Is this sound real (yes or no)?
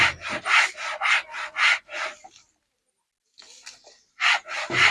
yes